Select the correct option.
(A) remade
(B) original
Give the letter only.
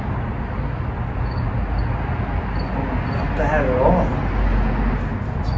B